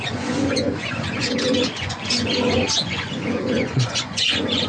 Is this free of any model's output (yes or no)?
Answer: no